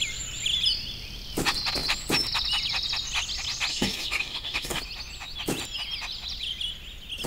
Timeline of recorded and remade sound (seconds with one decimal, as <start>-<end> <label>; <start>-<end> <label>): 0.0-3.7 recorded; 3.7-4.8 remade; 4.8-7.3 recorded